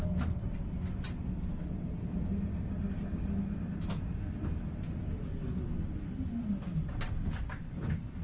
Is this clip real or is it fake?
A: real